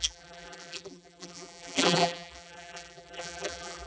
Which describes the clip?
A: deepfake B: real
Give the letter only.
A